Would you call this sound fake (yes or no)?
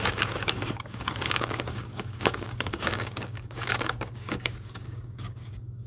yes